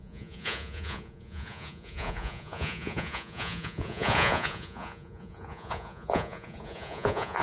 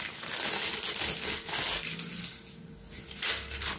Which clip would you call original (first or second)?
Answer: second